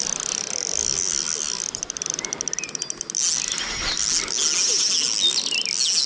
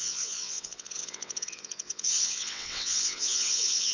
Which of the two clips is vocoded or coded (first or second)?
second